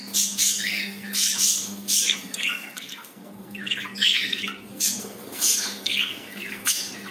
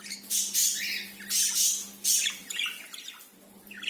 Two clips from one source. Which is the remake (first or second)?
first